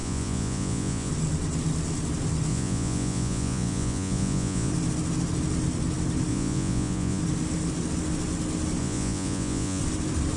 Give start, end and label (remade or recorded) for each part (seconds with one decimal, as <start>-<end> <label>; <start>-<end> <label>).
0.0-1.1 remade; 1.1-2.5 recorded; 2.5-4.7 remade; 4.7-6.3 recorded; 6.3-7.2 remade; 7.2-8.8 recorded; 8.8-9.8 remade; 9.8-10.4 recorded